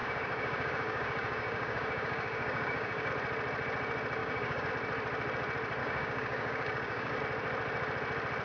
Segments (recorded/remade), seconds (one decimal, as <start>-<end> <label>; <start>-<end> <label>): 0.0-3.1 remade; 3.1-4.2 recorded; 4.2-4.7 remade; 4.7-5.8 recorded; 5.8-7.2 remade; 7.2-8.4 recorded